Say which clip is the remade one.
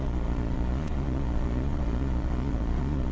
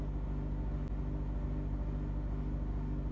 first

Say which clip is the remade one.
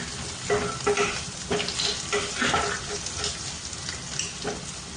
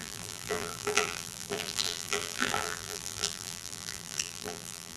second